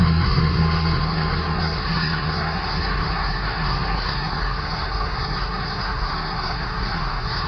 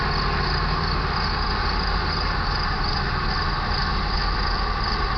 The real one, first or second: second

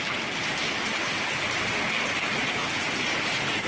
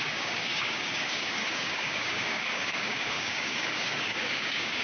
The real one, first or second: first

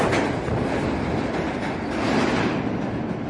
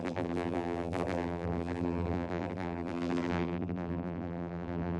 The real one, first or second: first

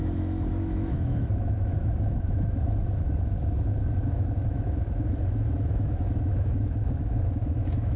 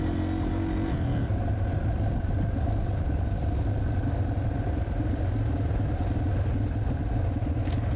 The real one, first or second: second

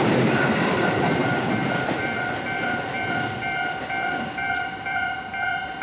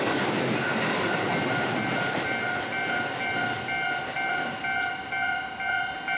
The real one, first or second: second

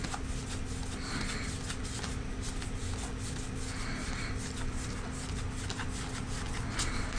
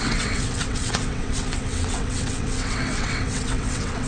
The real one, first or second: first